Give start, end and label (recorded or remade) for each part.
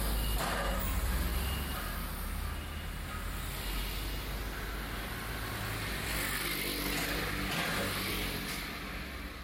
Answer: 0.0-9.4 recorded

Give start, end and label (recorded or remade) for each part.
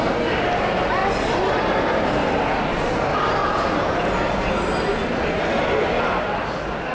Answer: 0.0-3.4 recorded; 3.4-4.5 remade; 4.5-6.9 recorded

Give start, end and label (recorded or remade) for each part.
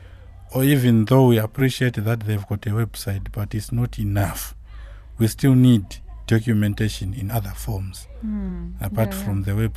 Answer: 0.0-1.6 recorded; 1.6-2.5 remade; 2.5-4.2 recorded; 4.2-7.3 remade; 7.3-9.8 recorded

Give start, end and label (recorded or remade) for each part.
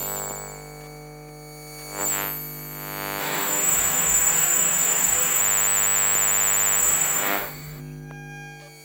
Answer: 0.0-3.2 recorded; 3.2-5.4 remade; 5.4-6.8 recorded; 6.8-7.8 remade; 7.8-8.8 recorded